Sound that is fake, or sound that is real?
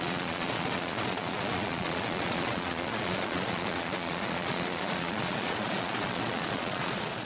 fake